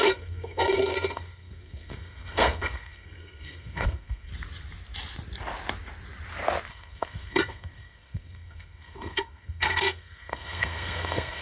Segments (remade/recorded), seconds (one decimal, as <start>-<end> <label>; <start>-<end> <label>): 0.0-4.3 remade; 4.3-6.7 recorded; 6.7-11.4 remade